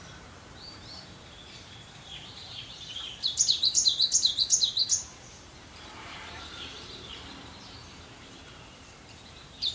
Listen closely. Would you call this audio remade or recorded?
remade